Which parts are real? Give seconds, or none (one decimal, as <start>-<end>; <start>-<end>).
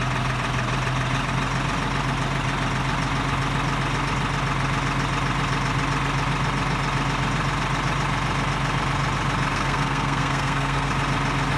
0.0-9.5; 10.9-11.6